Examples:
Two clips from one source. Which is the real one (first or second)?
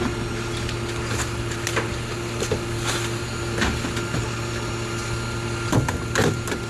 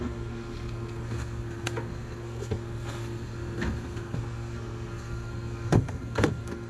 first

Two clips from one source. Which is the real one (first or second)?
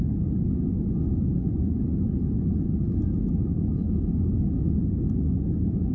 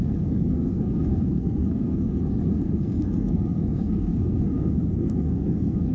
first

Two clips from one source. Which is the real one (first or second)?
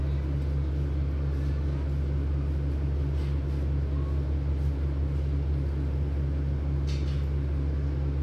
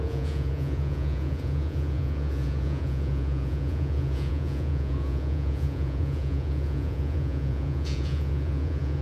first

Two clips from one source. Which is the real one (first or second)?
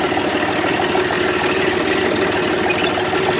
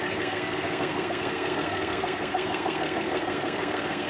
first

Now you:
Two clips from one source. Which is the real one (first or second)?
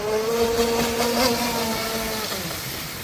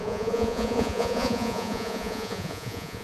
first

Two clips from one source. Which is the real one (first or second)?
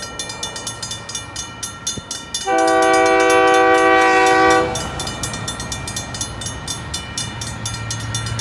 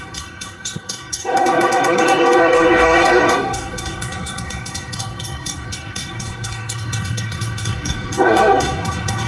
first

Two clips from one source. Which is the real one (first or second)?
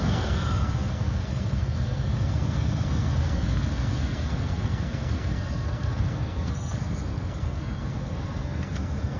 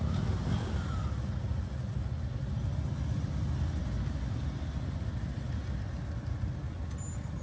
second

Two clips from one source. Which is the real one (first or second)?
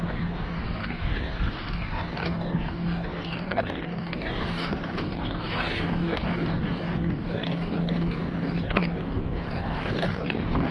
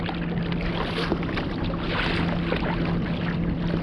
second